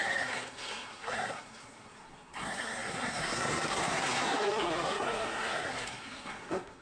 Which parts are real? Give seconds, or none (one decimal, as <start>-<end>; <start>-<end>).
none